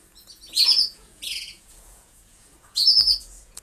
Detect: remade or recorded remade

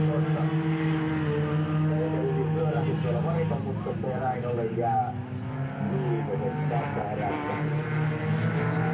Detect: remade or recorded recorded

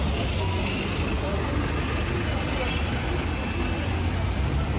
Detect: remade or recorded recorded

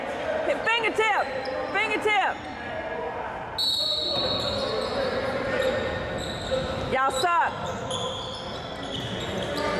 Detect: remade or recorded recorded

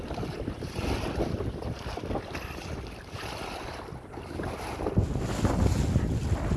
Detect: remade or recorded recorded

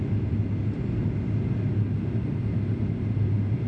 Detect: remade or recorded recorded